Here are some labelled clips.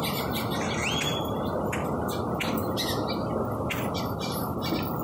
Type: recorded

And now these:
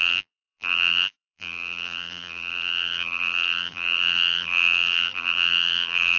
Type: remade